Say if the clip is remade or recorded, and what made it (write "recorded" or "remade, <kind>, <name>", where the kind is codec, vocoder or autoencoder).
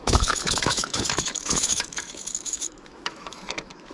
remade, autoencoder, DAC-VAE